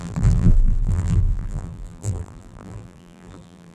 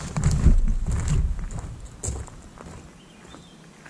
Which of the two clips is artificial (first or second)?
first